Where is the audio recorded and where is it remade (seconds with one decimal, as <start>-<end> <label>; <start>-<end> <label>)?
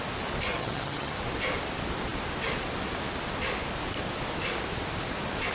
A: 0.0-0.5 recorded; 0.5-1.2 remade; 1.2-5.5 recorded